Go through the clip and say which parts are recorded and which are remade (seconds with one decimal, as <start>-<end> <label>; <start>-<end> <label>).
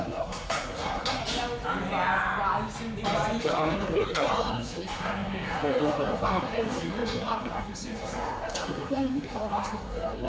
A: 0.0-1.2 remade; 1.2-3.4 recorded; 3.4-10.3 remade